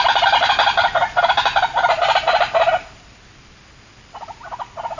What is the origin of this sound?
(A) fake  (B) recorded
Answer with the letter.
B